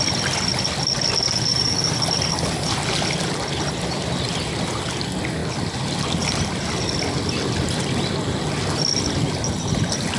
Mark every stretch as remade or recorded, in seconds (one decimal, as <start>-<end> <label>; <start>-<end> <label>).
0.0-10.2 recorded